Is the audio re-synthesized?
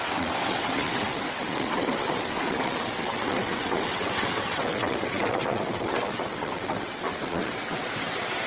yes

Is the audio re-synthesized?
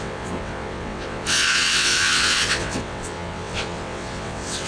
yes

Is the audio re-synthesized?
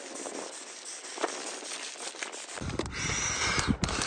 no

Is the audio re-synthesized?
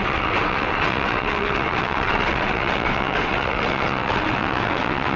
yes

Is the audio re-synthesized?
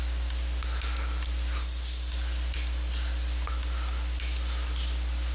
no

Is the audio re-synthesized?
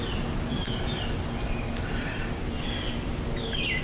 no